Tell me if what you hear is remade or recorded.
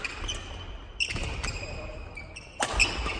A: recorded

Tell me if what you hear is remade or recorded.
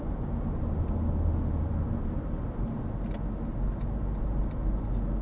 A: recorded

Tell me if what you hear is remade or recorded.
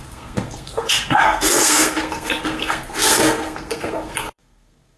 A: remade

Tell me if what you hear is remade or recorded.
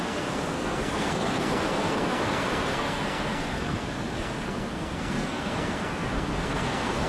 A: remade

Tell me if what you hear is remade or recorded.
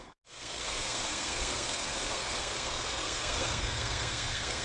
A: remade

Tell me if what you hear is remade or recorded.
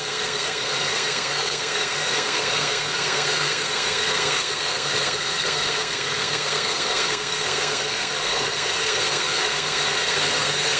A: remade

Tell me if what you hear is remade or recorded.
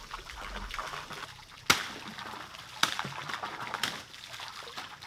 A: recorded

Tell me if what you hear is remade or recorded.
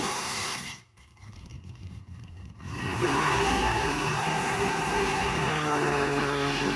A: remade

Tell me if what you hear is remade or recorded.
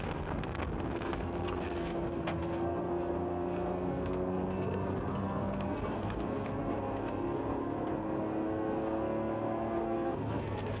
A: remade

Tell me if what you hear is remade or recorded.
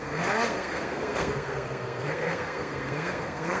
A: remade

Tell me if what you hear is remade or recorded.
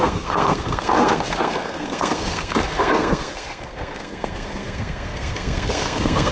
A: remade